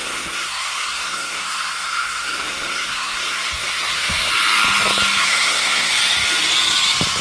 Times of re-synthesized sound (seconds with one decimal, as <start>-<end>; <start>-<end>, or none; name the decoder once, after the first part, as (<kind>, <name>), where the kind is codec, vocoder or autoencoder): 0.0-4.3 (codec, SNAC); 5.2-5.9